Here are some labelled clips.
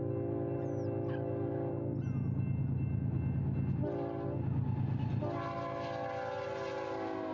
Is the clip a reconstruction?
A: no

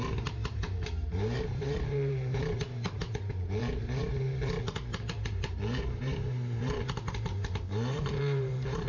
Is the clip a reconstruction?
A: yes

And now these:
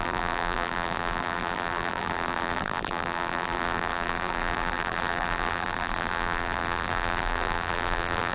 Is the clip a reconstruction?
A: yes